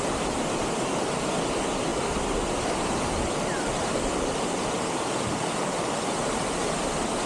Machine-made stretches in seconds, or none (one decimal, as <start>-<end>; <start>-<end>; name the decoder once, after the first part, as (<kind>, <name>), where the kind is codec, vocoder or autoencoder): none